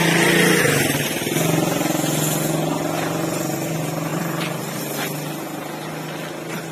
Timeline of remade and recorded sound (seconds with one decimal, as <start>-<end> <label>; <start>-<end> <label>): 0.0-4.1 recorded; 4.1-4.8 remade; 4.8-6.7 recorded